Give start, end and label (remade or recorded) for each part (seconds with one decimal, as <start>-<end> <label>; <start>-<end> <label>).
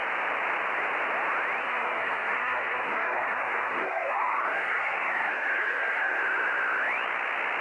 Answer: 0.0-1.6 recorded; 1.6-6.2 remade; 6.2-7.6 recorded